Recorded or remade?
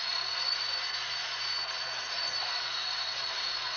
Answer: remade